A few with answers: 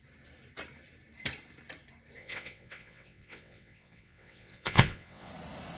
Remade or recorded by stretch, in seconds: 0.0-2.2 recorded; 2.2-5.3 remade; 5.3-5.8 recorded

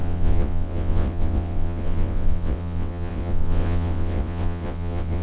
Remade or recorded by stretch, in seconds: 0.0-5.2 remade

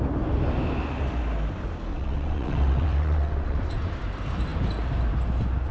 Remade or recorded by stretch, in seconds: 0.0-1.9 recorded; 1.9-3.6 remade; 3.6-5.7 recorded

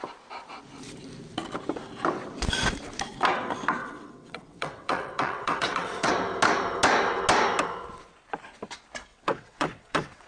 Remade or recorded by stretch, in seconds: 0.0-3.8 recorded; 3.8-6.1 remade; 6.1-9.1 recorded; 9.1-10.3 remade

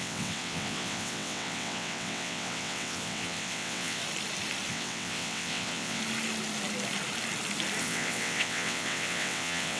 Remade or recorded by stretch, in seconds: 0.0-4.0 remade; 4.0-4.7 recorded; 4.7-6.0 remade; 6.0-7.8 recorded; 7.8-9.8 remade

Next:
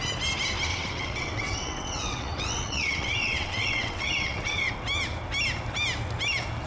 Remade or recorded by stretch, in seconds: 0.0-0.7 recorded; 0.7-4.7 remade; 4.7-6.7 recorded